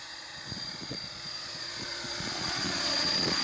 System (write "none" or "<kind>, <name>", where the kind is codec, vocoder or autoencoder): vocoder, Vocos